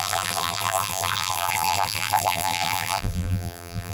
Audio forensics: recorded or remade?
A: remade